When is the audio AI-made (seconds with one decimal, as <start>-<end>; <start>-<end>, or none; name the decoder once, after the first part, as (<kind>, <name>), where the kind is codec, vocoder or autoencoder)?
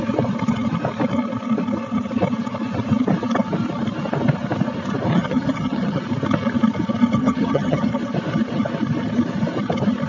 5.1-6.0 (vocoder, HiFi-GAN); 7.2-7.9